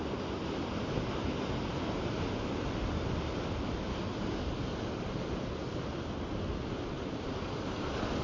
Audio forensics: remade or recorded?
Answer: recorded